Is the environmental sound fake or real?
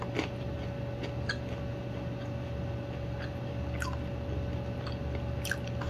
real